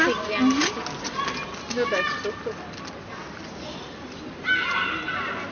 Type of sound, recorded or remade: recorded